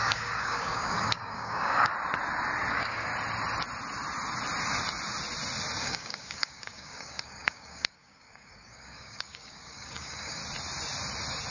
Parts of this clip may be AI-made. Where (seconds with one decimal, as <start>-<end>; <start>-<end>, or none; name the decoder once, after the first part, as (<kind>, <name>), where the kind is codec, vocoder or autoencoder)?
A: 0.0-1.9 (codec, DAC); 2.7-3.1; 5.8-10.4